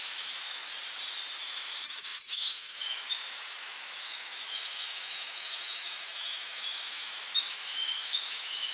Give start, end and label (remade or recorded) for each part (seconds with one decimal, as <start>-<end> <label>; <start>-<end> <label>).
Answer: 0.0-0.6 remade; 0.6-1.4 recorded; 1.4-8.7 remade